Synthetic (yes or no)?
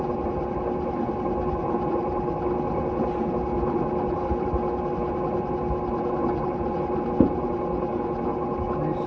no